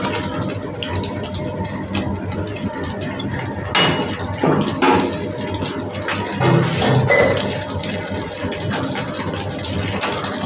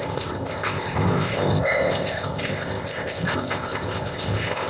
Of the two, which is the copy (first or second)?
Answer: second